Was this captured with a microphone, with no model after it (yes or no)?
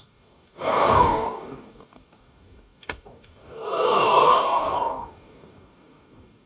no